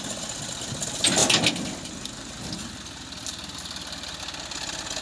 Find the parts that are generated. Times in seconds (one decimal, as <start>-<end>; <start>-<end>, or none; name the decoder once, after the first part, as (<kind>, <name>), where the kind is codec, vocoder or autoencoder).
none